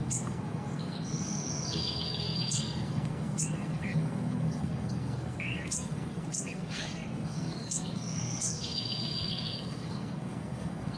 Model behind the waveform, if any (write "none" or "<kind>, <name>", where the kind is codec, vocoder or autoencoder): codec, SNAC